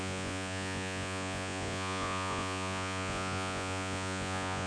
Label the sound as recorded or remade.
remade